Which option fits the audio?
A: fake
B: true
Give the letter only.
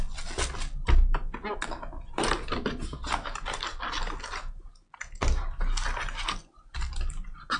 B